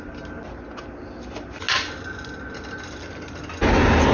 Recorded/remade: recorded